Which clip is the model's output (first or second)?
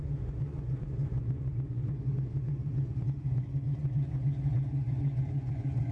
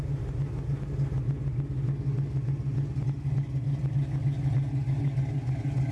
first